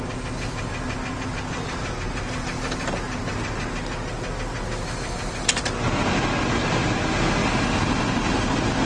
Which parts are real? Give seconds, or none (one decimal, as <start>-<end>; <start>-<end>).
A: 0.0-8.9